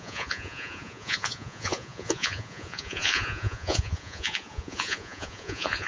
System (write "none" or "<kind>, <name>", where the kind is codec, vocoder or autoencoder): vocoder, Vocos